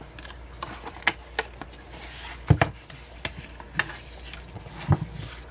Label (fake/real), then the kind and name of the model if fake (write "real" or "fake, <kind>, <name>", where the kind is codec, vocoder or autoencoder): real